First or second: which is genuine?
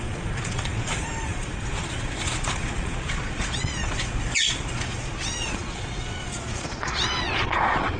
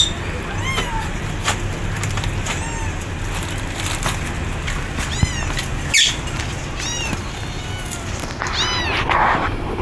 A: second